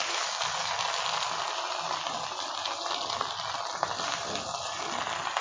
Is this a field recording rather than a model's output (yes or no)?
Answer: yes